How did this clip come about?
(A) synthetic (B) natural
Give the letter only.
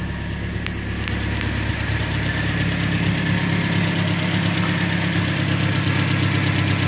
B